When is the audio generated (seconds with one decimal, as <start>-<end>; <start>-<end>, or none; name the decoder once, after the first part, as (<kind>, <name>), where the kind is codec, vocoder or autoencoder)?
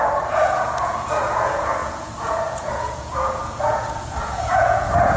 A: 0.0-5.2 (vocoder, Vocos)